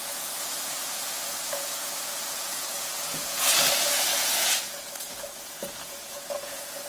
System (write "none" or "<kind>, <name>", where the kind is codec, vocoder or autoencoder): vocoder, Vocos